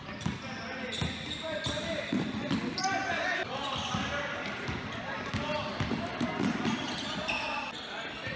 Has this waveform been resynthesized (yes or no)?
no